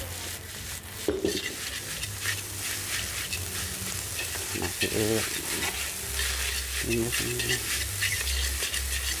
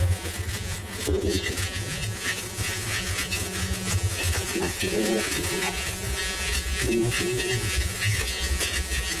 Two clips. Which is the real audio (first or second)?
first